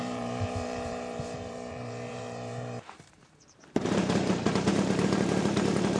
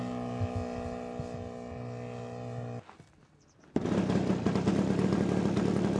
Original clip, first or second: second